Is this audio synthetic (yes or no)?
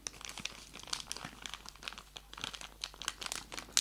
no